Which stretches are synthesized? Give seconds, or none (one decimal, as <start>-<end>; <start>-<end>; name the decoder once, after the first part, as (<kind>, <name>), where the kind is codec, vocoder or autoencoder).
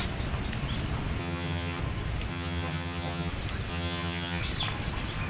1.2-1.8 (vocoder, HiFi-GAN); 2.3-3.3; 3.7-4.4